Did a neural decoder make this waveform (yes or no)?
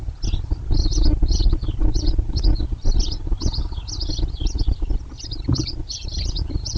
no